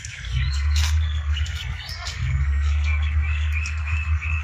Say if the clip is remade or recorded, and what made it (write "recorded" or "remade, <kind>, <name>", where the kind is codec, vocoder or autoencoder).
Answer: remade, codec, SNAC